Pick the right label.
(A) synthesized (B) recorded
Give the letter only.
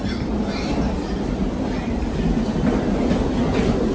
B